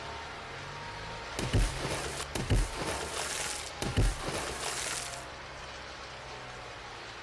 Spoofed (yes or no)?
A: no